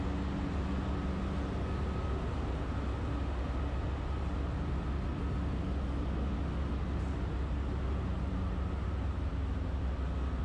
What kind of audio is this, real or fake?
real